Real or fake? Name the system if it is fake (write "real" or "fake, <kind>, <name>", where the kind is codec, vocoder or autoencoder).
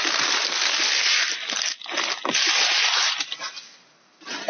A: real